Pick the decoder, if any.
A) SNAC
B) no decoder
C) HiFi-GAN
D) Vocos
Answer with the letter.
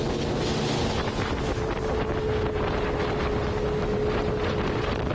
B